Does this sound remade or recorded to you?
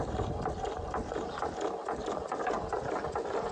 recorded